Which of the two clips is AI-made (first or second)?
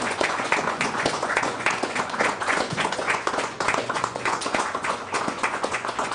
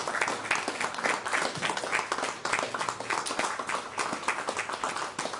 first